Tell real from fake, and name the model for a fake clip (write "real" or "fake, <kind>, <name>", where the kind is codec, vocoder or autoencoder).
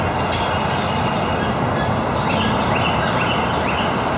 real